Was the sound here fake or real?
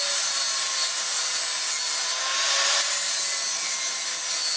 real